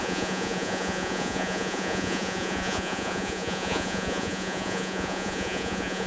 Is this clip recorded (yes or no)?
no